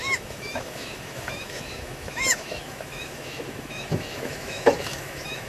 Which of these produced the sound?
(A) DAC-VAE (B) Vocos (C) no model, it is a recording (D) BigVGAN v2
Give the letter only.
A